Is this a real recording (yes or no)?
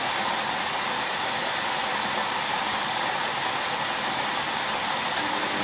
yes